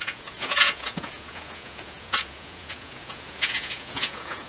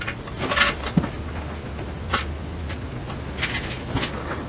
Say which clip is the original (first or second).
second